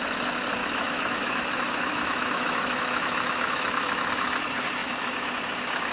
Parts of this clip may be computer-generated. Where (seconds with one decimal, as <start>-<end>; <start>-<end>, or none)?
0.6-4.1